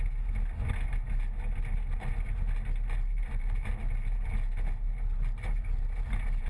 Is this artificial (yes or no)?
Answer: no